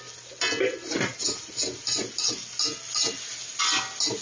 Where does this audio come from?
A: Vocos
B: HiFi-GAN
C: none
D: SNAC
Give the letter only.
C